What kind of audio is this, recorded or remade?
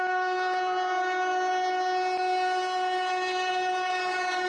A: recorded